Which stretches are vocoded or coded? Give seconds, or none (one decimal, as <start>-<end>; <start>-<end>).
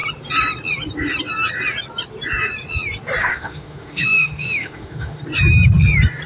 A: 3.2-5.2